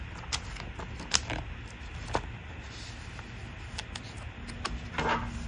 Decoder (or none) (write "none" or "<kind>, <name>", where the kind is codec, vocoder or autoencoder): none